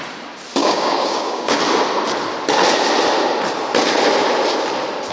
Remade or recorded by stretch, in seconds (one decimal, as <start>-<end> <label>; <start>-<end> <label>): 0.0-0.6 recorded; 0.6-1.6 remade; 1.6-5.1 recorded